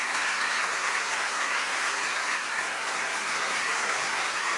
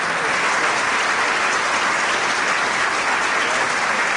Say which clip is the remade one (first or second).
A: first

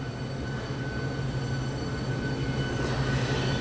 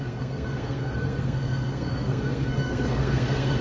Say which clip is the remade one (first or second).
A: second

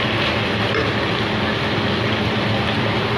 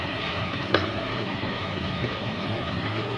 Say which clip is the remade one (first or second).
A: second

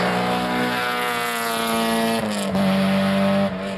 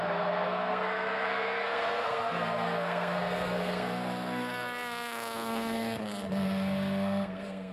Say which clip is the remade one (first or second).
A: second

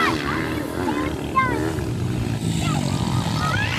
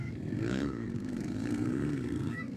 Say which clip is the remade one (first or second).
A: second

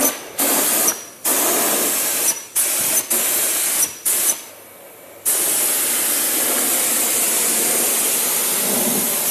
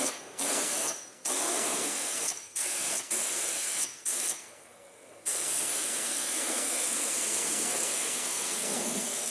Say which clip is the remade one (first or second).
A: second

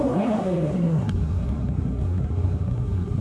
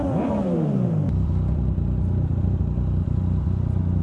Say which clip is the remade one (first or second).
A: first